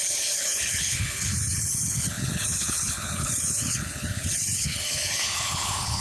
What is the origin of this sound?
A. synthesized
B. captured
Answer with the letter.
A